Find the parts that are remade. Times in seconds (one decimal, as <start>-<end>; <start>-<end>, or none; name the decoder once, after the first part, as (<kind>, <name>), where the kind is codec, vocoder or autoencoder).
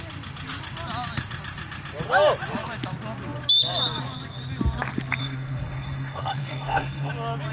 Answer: 5.2-7.1 (codec, SNAC)